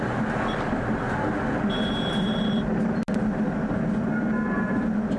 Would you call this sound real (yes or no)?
yes